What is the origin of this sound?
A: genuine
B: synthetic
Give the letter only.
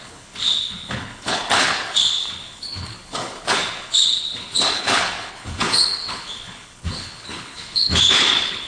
B